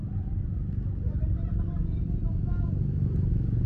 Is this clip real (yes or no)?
yes